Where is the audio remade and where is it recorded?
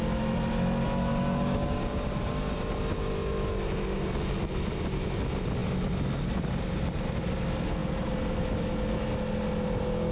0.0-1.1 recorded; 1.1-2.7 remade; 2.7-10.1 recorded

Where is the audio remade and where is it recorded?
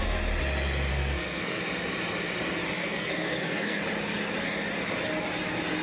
0.0-0.9 recorded; 0.9-1.6 remade; 1.6-2.8 recorded; 2.8-3.8 remade; 3.8-5.8 recorded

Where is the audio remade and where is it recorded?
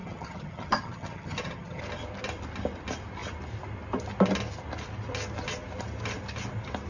0.0-1.8 remade; 1.8-6.9 recorded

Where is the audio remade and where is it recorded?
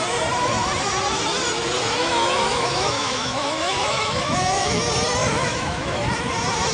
0.0-2.0 recorded; 2.0-4.8 remade; 4.8-5.2 recorded; 5.2-6.1 remade; 6.1-6.7 recorded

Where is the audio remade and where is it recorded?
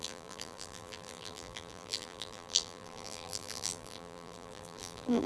0.0-5.3 remade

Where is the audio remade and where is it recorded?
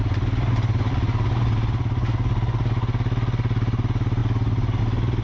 0.0-5.2 recorded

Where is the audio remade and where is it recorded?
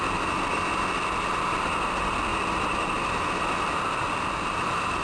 0.0-2.3 recorded; 2.3-2.8 remade; 2.8-5.0 recorded